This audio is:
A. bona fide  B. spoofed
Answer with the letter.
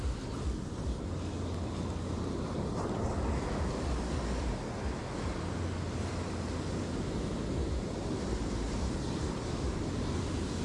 A